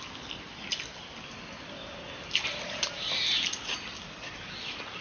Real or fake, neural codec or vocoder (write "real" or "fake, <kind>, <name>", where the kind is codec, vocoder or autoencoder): real